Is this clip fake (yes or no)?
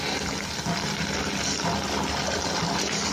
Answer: no